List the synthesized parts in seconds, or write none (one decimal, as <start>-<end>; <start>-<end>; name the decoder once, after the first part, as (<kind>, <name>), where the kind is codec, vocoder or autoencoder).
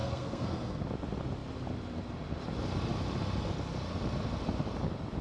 0.0-0.8 (codec, SNAC)